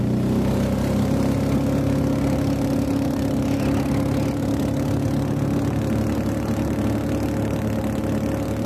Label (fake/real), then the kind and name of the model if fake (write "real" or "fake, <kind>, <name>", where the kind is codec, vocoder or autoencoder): real